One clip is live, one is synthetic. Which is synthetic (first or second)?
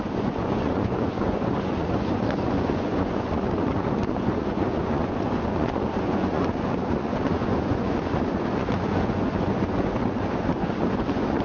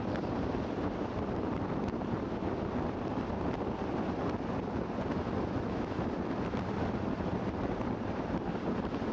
first